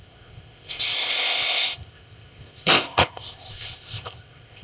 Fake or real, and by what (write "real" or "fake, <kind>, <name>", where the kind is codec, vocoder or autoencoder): fake, codec, ZipCodec